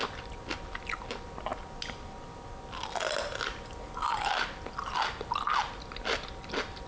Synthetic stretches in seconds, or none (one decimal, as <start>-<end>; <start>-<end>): none